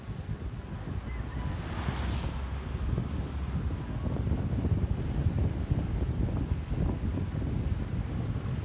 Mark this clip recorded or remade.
recorded